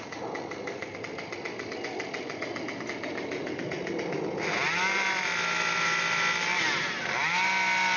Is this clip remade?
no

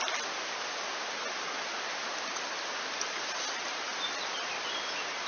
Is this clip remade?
no